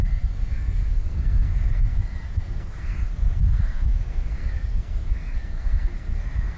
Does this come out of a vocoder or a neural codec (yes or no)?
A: yes